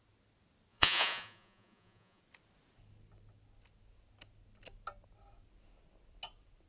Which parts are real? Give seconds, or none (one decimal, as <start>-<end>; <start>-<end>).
0.0-0.7; 2.2-6.7